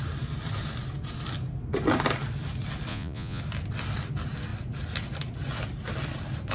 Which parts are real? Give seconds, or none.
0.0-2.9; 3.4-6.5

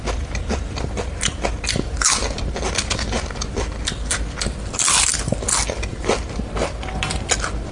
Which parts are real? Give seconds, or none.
0.0-7.7

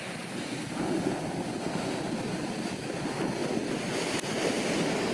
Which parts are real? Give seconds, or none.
0.0-5.1

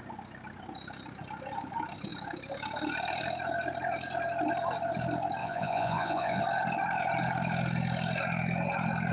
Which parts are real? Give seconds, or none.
0.0-5.4; 6.4-9.1

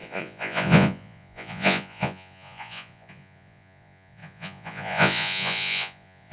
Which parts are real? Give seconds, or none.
none

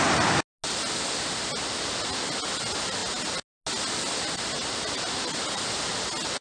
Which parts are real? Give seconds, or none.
0.0-6.4

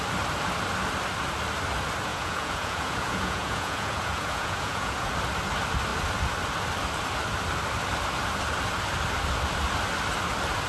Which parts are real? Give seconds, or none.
0.0-2.1; 5.1-10.7